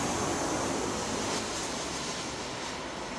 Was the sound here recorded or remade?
recorded